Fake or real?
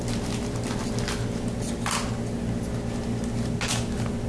real